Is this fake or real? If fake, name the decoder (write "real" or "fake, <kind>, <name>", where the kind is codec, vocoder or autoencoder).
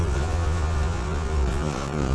fake, vocoder, Vocos